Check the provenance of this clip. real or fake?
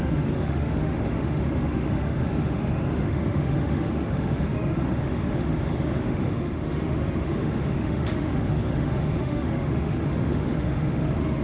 fake